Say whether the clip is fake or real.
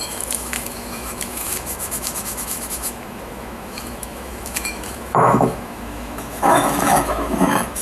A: fake